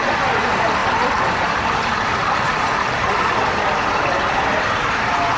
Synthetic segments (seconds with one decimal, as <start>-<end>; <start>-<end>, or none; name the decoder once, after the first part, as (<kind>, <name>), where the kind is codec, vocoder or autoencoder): 0.8-4.0 (vocoder, BigVGAN v2)